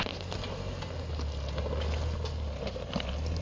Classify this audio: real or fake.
real